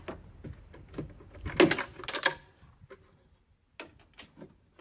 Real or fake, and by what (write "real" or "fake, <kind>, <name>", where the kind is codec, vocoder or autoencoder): real